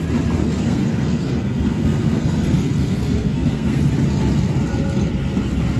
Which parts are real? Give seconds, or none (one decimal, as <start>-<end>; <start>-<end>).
0.0-0.4; 3.8-5.8